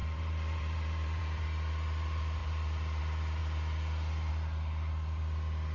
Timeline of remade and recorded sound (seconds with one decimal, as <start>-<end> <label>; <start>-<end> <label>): 0.0-1.2 remade; 1.2-2.4 recorded; 2.4-3.0 remade; 3.0-5.7 recorded